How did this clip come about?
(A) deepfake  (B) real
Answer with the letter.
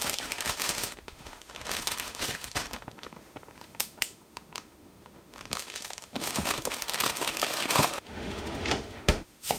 A